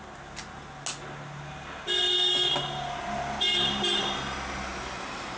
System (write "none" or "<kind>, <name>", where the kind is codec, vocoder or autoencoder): none